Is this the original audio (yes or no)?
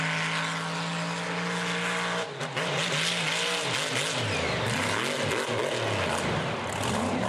yes